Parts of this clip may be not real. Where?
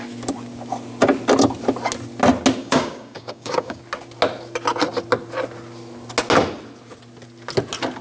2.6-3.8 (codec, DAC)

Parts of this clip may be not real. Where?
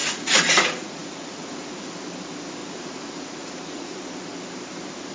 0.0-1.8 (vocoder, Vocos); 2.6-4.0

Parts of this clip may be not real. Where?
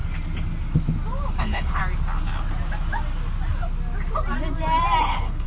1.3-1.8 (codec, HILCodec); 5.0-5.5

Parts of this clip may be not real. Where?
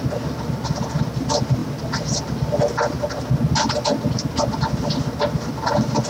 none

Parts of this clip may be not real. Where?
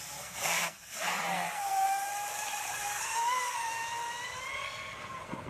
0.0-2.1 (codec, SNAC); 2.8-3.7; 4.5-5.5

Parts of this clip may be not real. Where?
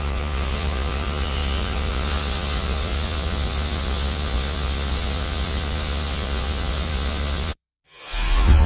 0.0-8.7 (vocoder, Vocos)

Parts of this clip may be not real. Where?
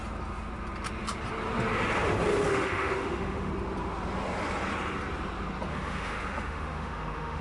2.5-3.5 (autoencoder, DAC-VAE); 5.7-7.4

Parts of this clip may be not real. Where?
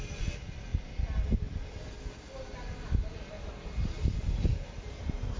none